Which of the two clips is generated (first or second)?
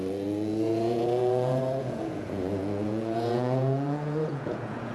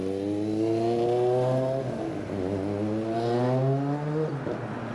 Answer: first